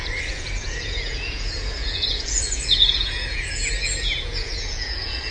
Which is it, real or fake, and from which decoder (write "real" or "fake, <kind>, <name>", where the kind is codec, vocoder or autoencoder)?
fake, vocoder, Vocos